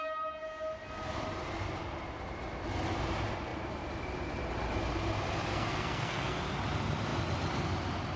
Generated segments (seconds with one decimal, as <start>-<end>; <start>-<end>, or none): 5.5-6.4